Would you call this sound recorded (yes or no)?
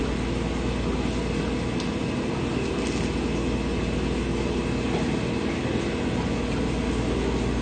yes